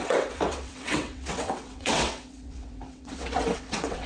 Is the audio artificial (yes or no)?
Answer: yes